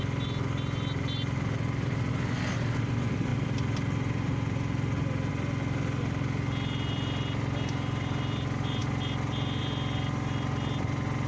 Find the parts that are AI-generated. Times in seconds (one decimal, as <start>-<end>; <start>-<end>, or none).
none